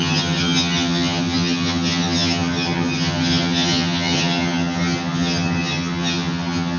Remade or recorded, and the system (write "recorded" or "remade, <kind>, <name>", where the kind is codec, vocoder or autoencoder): remade, vocoder, HiFi-GAN